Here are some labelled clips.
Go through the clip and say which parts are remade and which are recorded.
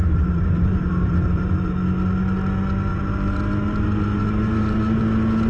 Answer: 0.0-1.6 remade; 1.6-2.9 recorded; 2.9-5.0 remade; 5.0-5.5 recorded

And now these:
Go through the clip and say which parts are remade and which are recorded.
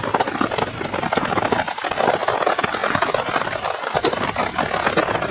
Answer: 0.0-2.8 recorded; 2.8-4.6 remade; 4.6-5.3 recorded